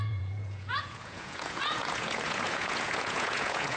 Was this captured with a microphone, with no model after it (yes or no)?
no